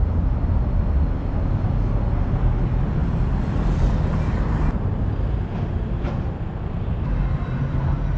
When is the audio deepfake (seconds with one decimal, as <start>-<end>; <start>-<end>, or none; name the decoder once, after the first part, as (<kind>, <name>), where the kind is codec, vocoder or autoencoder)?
none